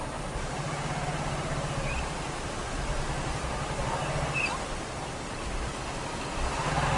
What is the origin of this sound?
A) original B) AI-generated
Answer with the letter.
A